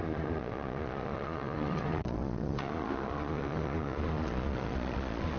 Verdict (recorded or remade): remade